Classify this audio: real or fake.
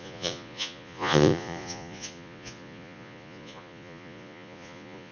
fake